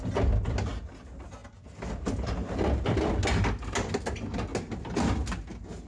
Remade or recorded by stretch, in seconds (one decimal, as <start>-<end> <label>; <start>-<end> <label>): 0.0-5.9 recorded

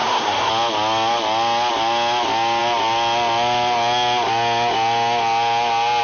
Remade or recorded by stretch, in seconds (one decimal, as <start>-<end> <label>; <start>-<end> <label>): 0.0-0.5 remade; 0.5-6.0 recorded